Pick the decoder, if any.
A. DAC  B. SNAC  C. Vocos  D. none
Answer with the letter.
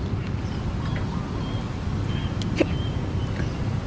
D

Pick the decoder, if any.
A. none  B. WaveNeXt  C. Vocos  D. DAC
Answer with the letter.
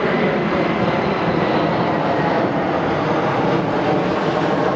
A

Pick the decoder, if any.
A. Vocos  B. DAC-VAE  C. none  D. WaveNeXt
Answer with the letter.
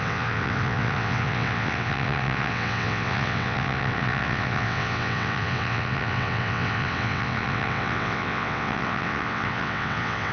D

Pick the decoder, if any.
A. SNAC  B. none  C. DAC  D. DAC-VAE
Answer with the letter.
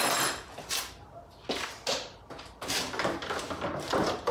B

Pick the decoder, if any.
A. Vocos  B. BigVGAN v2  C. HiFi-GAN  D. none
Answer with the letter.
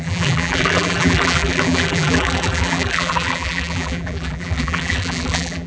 B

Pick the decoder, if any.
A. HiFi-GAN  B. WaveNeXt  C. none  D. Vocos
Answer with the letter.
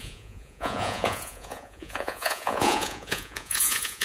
D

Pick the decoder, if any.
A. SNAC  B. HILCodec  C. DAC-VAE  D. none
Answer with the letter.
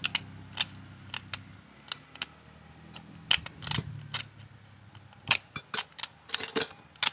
D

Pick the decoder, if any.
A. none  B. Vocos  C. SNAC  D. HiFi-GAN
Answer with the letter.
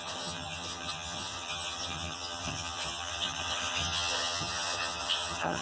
D